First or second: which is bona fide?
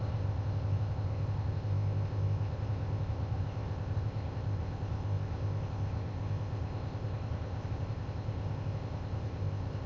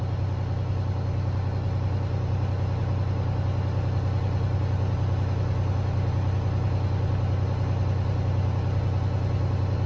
second